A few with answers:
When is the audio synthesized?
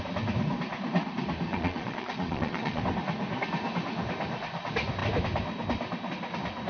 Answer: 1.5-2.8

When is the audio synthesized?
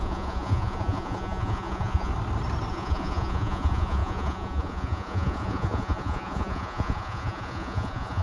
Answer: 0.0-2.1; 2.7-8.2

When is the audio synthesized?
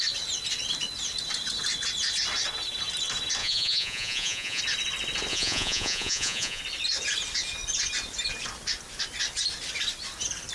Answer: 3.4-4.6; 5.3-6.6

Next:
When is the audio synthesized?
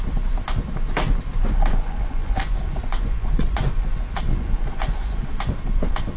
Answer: 1.7-5.4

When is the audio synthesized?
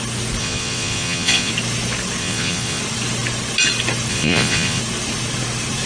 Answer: 0.4-1.5; 2.2-2.8; 4.1-4.8